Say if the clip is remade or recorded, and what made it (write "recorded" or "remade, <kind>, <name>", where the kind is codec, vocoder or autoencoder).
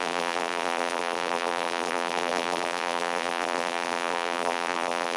remade, vocoder, BigVGAN v2